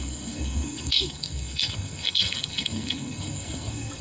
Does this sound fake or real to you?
fake